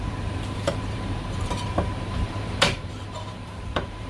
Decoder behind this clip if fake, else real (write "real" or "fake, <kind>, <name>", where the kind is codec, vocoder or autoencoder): fake, vocoder, BigVGAN v2